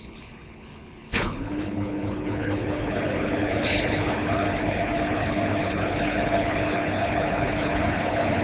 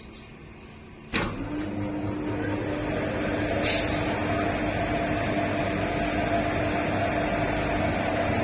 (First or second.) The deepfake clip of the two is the first